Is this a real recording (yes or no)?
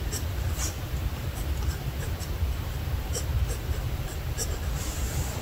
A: yes